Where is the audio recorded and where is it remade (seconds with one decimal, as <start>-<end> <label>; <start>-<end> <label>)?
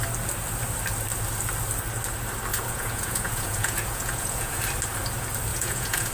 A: 0.0-2.5 recorded; 2.5-4.6 remade; 4.6-5.5 recorded; 5.5-6.1 remade